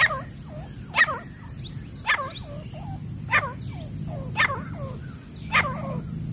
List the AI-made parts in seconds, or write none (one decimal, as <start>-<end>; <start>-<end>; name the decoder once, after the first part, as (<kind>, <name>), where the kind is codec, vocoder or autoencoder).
none